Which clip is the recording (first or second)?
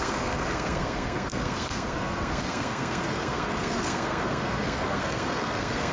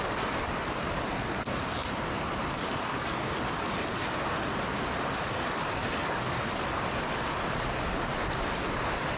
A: second